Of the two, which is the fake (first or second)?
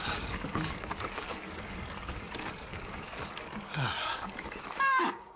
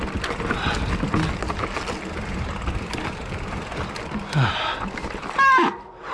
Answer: first